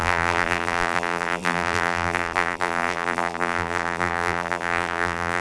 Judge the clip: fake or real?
fake